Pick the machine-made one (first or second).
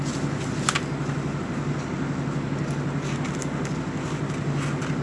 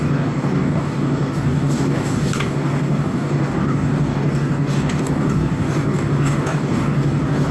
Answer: second